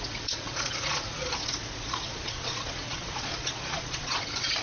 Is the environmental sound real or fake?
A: fake